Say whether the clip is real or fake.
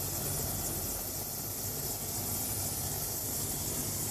real